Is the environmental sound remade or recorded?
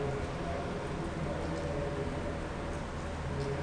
recorded